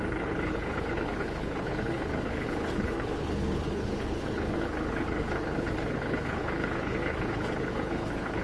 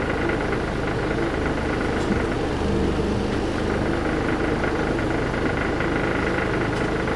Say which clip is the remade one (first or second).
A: first